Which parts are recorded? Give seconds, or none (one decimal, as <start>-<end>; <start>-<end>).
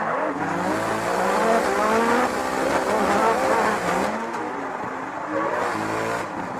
0.0-6.6